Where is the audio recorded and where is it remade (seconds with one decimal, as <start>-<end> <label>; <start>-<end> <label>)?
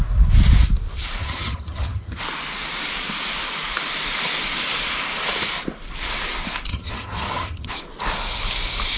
0.0-1.2 recorded; 1.2-2.2 remade; 2.2-6.7 recorded; 6.7-7.7 remade; 7.7-9.0 recorded